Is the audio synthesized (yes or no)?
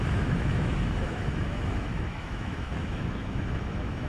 yes